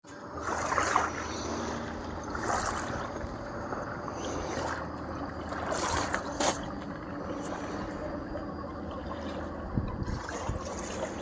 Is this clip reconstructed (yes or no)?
no